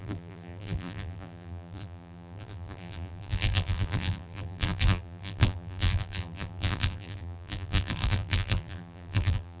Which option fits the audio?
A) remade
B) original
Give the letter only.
A